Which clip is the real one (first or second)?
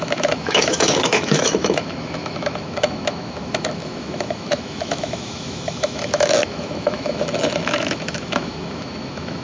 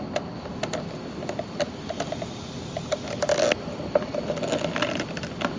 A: second